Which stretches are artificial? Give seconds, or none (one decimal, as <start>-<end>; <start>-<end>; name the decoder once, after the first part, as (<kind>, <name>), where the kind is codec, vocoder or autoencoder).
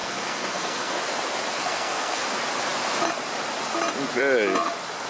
0.0-1.0 (codec, SNAC); 1.6-2.2